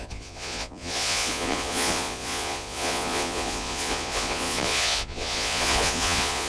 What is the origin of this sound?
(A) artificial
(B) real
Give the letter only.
A